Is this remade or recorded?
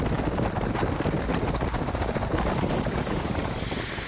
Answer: recorded